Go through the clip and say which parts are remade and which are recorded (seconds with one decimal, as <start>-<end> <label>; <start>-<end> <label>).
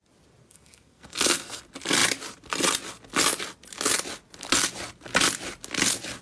0.0-0.4 recorded; 0.4-1.6 remade; 1.6-6.2 recorded